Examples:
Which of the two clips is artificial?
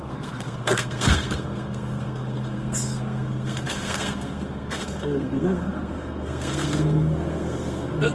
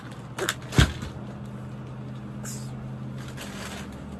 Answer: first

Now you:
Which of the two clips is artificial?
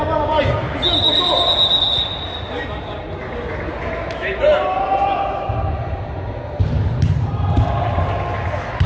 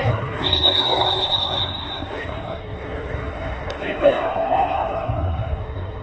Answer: second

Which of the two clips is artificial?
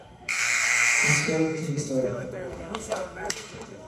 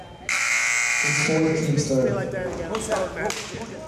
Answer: first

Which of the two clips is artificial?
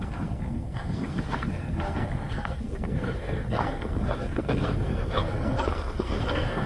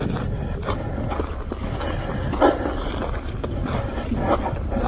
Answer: first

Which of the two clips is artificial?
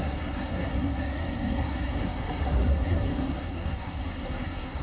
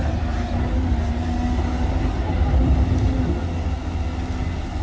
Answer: first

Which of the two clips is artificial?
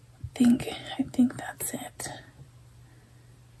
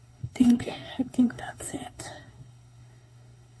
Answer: second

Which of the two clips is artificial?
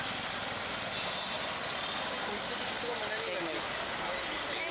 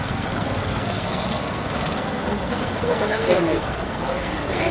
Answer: second